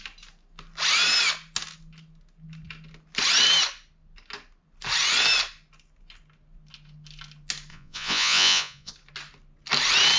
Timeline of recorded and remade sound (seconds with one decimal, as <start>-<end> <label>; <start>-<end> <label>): 0.0-7.7 recorded; 7.7-8.9 remade; 8.9-10.2 recorded